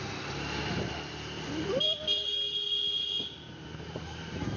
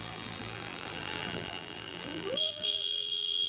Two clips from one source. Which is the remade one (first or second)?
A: second